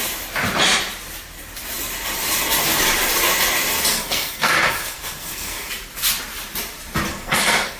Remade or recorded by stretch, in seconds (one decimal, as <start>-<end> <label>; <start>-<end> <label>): 0.0-3.9 recorded; 3.9-5.7 remade; 5.7-7.1 recorded; 7.1-7.8 remade